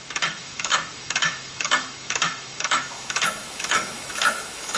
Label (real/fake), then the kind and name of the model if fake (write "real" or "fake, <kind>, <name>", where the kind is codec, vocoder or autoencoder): fake, autoencoder, DAC-VAE